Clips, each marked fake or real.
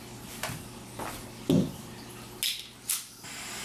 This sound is real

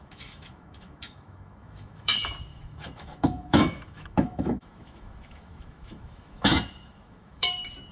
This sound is fake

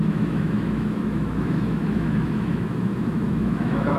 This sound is fake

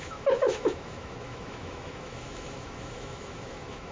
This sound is fake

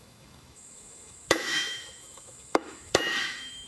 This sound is fake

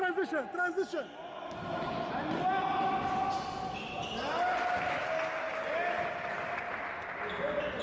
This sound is real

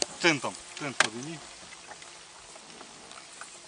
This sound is real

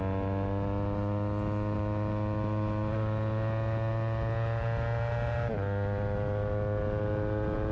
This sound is real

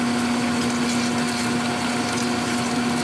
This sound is real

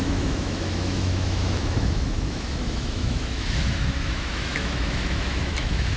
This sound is fake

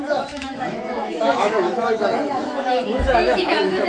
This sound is fake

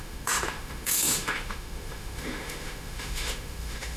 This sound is fake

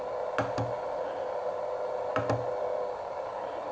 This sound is real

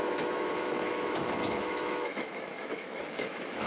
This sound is fake